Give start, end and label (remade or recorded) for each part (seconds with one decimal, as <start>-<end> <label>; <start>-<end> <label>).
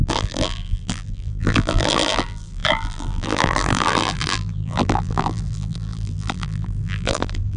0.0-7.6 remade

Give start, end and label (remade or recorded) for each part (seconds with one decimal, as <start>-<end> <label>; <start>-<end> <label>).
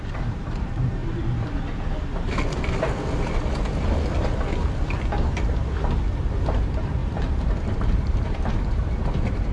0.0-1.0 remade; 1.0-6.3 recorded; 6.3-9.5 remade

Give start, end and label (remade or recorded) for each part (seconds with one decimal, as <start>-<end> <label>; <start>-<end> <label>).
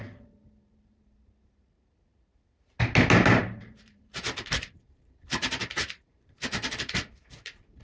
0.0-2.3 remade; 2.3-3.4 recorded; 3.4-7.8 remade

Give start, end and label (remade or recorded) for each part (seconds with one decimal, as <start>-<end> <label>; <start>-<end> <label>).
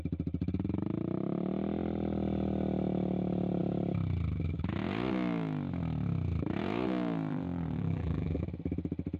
0.0-7.3 recorded; 7.3-8.4 remade; 8.4-9.2 recorded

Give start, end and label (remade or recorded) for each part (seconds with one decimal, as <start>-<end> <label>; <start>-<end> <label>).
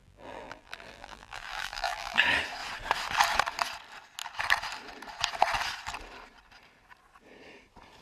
0.0-2.2 remade; 2.2-8.0 recorded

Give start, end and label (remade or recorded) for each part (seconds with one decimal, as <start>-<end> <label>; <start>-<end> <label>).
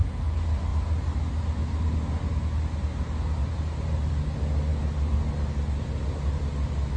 0.0-3.4 recorded; 3.4-4.1 remade; 4.1-7.0 recorded